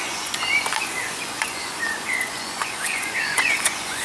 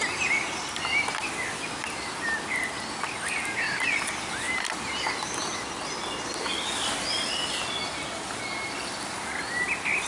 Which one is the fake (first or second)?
first